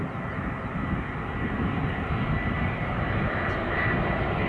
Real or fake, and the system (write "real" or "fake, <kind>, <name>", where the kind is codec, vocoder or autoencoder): real